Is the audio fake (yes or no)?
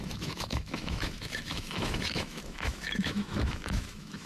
yes